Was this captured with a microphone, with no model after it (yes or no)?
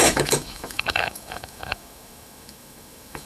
no